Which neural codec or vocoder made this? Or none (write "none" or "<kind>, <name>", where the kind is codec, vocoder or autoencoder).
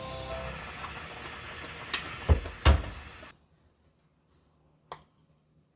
none